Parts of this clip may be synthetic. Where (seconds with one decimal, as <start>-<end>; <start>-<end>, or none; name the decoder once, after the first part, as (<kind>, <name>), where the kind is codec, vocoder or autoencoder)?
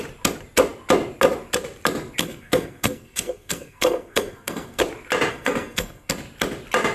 2.2-4.8 (codec, SNAC); 5.3-6.1